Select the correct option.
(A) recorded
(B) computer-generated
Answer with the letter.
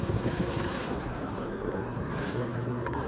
B